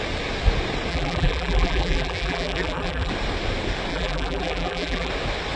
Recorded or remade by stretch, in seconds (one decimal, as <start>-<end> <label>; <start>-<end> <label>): 0.0-0.9 recorded; 0.9-3.1 remade; 3.1-3.9 recorded; 3.9-5.1 remade; 5.1-5.6 recorded